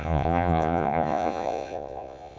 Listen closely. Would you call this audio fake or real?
fake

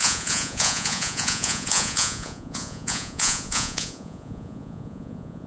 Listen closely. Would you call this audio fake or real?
fake